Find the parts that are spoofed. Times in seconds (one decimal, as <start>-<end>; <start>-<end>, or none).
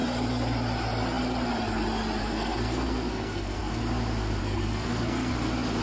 2.2-3.8; 4.4-5.3